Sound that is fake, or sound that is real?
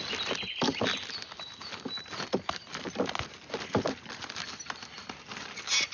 real